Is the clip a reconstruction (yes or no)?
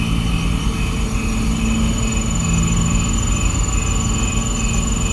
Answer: no